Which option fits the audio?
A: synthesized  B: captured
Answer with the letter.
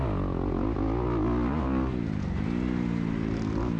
B